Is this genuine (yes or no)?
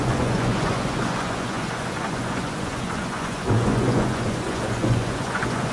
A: no